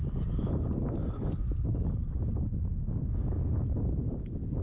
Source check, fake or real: real